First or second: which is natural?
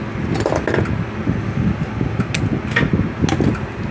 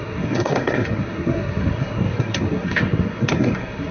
first